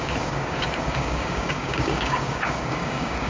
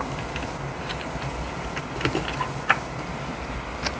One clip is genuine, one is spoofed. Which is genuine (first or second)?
second